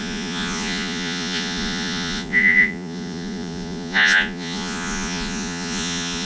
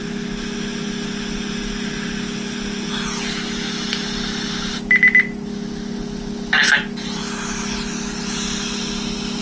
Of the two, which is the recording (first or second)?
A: second